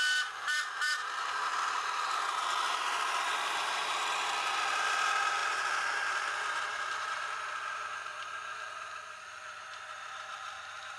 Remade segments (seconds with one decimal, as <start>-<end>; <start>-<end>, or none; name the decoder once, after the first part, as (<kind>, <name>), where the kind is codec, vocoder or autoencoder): none